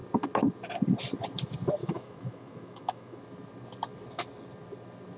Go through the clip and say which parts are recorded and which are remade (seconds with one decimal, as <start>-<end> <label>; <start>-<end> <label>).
0.0-1.8 recorded; 1.8-3.2 remade; 3.2-5.2 recorded